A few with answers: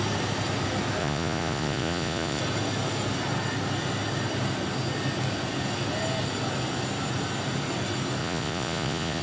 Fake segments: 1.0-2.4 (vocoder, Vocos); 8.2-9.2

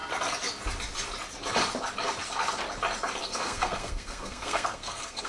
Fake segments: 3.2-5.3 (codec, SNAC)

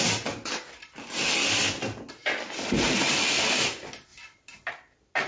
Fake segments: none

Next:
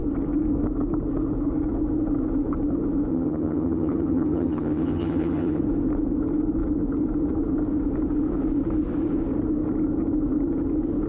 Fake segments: 3.1-5.6 (vocoder, HiFi-GAN)

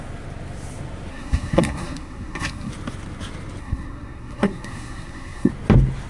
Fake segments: 1.1-2.7 (codec, SNAC); 3.6-5.5